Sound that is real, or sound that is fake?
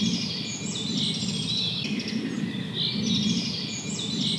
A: real